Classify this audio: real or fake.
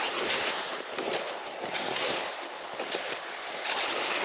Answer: real